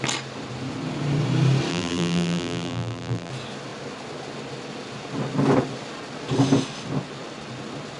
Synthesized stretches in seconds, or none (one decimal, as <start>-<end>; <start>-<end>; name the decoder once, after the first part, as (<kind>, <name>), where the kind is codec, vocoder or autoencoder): 1.7-3.3 (vocoder, BigVGAN v2)